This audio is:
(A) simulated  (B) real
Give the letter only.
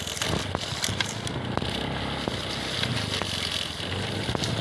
B